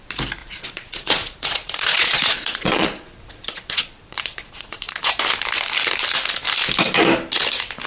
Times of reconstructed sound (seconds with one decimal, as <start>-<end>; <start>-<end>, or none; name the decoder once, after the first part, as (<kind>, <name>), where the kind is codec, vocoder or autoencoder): 0.4-5.1 (vocoder, Vocos)